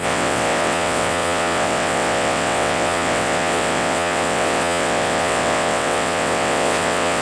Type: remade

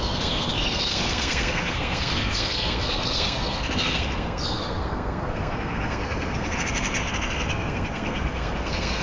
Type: remade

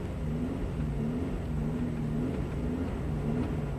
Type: recorded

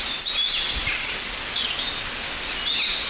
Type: recorded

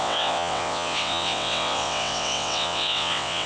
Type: remade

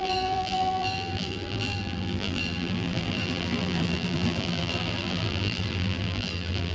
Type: remade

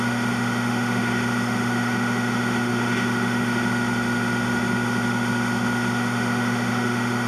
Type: remade